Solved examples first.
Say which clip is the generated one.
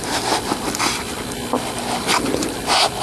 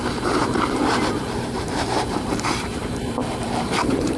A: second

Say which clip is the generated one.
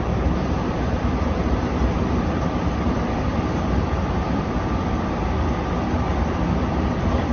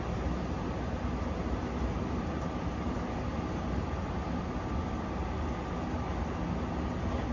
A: first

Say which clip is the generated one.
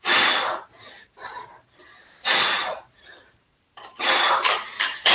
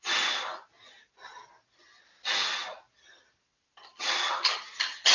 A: first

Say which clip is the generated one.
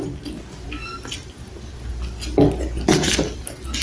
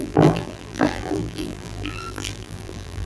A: second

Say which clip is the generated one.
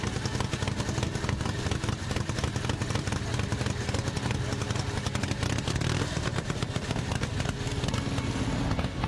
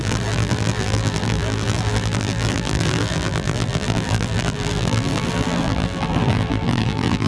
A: second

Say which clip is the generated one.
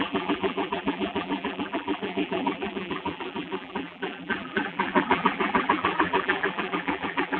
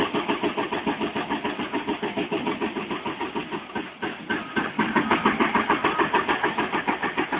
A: first